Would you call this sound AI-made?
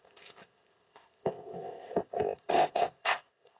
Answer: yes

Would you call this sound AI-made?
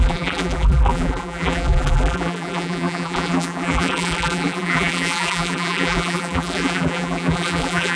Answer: yes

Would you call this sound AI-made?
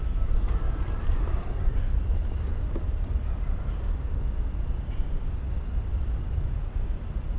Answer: no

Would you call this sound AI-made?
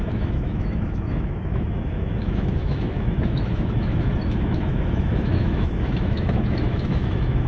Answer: yes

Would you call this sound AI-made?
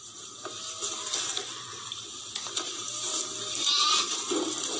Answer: no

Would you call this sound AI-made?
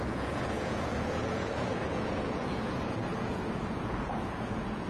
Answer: yes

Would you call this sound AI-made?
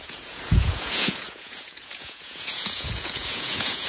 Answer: yes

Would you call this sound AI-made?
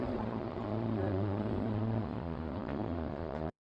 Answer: yes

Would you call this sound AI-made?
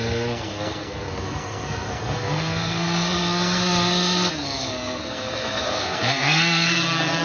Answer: yes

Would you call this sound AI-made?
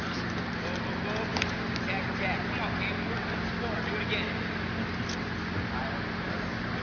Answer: no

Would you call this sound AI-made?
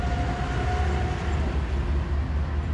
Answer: no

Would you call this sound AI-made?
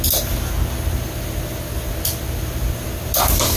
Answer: no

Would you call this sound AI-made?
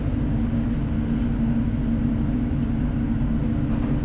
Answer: no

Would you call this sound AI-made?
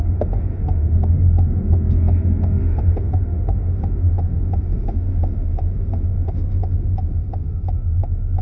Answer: yes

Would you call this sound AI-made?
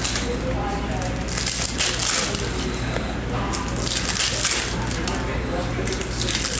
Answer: no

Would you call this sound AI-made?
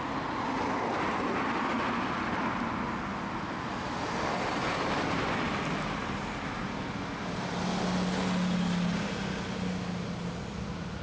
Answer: no